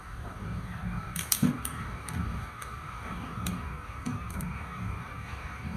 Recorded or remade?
remade